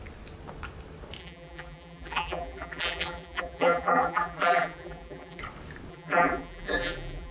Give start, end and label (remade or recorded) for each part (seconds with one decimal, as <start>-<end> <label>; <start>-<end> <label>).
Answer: 0.0-1.2 recorded; 1.2-5.4 remade; 5.4-5.9 recorded; 5.9-7.3 remade